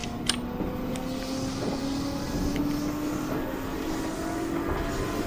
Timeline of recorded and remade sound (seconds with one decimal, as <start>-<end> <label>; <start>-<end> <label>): 0.0-5.3 recorded